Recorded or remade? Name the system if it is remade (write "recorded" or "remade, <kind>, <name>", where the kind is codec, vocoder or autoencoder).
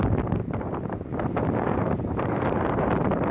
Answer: remade, vocoder, BigVGAN v2